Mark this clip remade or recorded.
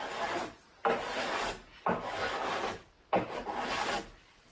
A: recorded